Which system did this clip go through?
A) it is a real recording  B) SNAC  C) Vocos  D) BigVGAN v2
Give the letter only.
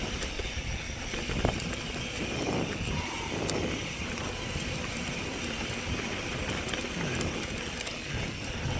A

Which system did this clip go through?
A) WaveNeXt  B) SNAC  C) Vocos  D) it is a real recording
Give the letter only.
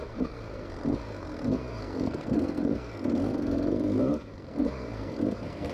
B